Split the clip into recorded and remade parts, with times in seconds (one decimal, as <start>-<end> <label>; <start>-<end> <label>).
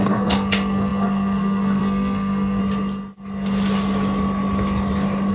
0.0-2.6 remade; 2.6-5.3 recorded